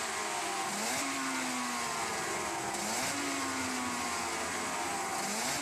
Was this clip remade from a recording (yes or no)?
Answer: no